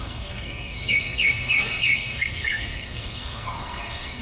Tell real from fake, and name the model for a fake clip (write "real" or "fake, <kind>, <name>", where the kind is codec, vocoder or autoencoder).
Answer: fake, codec, SNAC